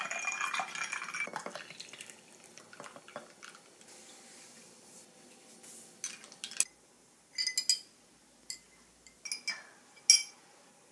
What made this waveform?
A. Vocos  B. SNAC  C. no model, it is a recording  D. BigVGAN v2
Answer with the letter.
C